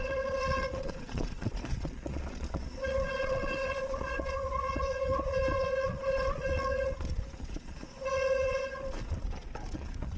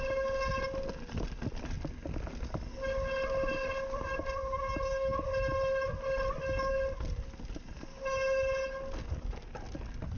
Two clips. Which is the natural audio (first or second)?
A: second